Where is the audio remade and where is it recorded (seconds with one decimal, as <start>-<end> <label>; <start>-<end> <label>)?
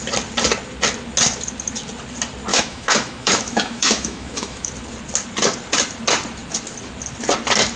0.0-2.5 recorded; 2.5-4.7 remade; 4.7-7.8 recorded